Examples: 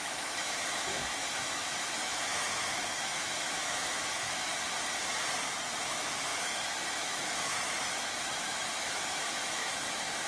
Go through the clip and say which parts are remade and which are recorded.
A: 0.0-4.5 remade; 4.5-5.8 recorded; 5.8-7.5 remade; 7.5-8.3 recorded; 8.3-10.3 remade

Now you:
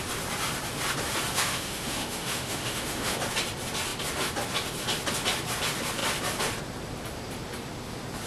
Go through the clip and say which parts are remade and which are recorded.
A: 0.0-1.3 recorded; 1.3-3.2 remade; 3.2-8.3 recorded